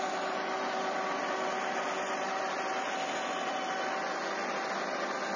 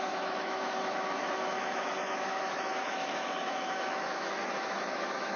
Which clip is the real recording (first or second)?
first